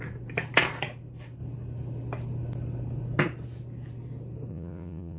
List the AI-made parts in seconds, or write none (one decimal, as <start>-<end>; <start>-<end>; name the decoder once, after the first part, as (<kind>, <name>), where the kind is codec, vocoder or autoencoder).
4.5-5.2 (vocoder, Vocos)